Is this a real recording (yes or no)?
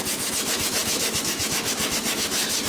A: no